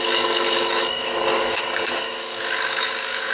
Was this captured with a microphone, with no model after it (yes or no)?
no